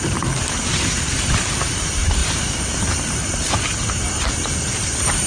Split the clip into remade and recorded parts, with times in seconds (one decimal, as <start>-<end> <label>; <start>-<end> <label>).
0.0-5.3 remade